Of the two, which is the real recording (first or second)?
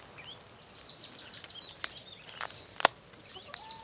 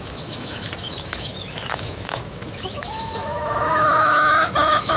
first